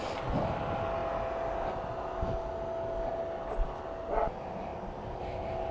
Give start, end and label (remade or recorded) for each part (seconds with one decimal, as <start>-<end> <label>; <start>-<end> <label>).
0.0-5.7 recorded